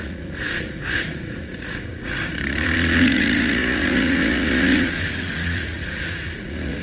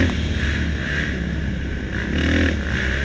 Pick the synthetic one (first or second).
first